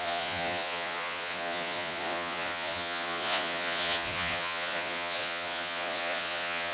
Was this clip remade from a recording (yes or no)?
yes